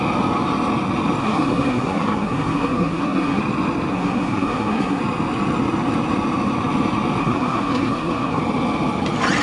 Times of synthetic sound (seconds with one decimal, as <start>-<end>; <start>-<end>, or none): 1.2-3.4; 3.9-5.0; 7.2-8.4